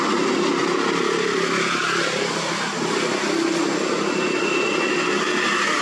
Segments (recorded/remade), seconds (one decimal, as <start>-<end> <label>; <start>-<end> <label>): 0.0-5.8 recorded